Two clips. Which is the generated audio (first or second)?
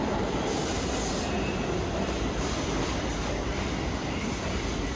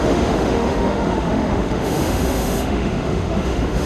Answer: second